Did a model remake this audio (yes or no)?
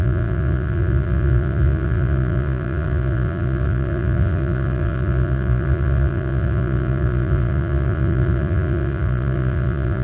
yes